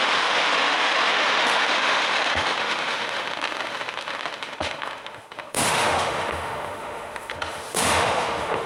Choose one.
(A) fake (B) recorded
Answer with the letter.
A